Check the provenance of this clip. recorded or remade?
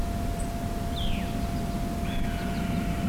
recorded